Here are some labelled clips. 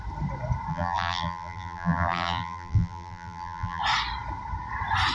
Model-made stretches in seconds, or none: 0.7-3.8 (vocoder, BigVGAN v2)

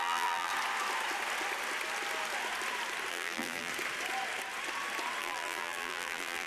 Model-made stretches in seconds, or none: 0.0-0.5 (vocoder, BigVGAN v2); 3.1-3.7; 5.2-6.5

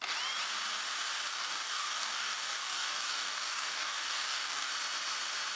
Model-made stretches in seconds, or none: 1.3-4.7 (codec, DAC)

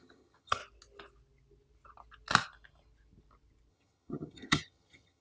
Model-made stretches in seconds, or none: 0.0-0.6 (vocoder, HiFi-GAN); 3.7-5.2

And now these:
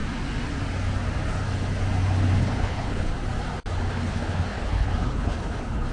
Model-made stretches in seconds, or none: 2.4-3.1 (codec, HILCodec); 3.9-5.9

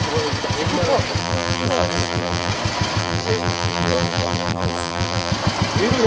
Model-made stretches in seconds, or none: 1.2-2.5 (vocoder, BigVGAN v2); 3.0-5.3